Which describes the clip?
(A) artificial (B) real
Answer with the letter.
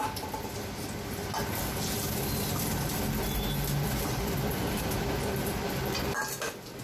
A